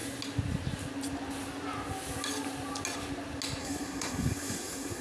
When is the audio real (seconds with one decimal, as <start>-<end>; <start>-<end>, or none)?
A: 0.0-3.6